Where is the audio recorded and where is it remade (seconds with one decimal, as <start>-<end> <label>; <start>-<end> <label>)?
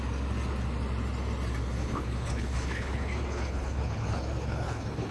0.0-1.8 recorded; 1.8-5.1 remade